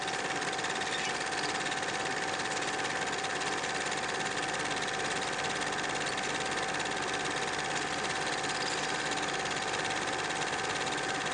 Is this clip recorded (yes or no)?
yes